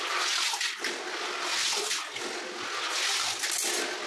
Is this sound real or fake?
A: real